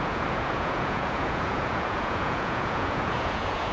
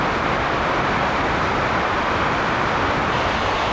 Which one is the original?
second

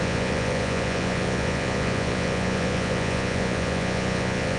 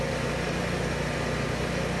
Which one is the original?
second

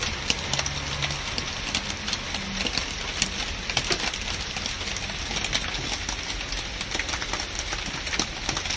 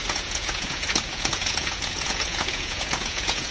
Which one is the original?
first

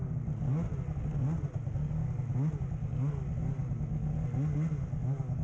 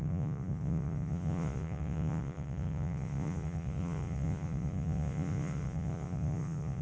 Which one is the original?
first